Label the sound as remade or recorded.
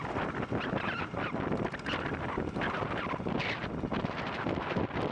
recorded